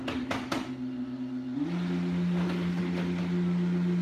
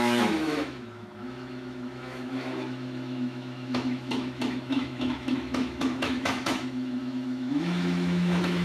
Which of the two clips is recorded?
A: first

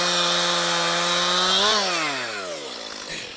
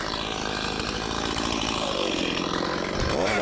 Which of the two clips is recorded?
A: first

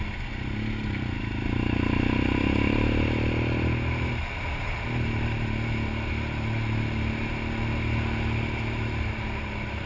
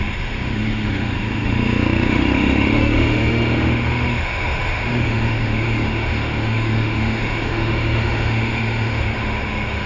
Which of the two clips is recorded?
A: first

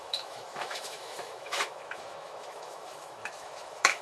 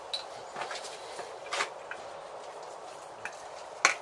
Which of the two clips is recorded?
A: second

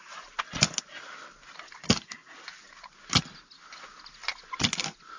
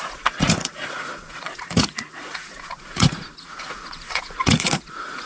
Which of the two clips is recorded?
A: first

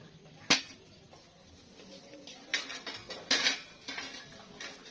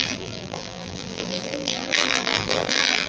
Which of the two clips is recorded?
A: first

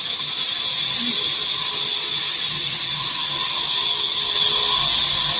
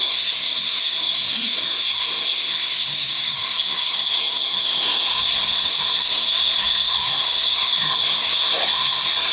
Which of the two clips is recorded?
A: first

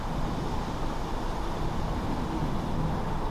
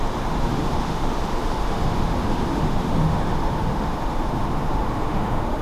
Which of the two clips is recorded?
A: first